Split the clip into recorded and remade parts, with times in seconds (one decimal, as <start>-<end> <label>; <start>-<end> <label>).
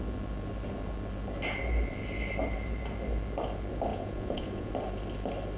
0.0-3.9 recorded; 3.9-4.7 remade; 4.7-5.6 recorded